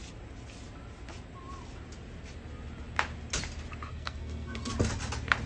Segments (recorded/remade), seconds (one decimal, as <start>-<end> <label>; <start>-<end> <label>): 0.0-3.9 recorded; 3.9-4.7 remade; 4.7-5.5 recorded